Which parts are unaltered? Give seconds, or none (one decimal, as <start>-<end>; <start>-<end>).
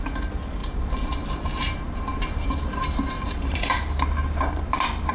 0.0-0.6; 3.7-5.1